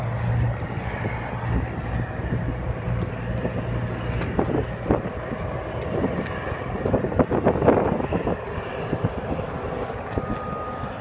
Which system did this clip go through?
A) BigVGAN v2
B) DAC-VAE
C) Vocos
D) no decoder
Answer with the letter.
D